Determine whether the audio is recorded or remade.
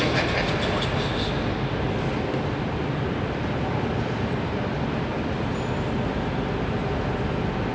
recorded